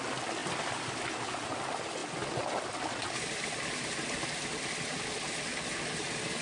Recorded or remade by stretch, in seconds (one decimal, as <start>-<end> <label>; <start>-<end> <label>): 0.0-6.4 recorded